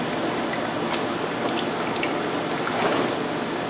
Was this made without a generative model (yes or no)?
yes